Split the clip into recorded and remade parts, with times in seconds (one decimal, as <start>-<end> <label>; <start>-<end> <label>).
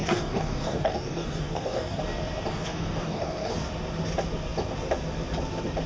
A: 0.0-2.0 remade; 2.0-2.5 recorded; 2.5-3.5 remade; 3.5-5.9 recorded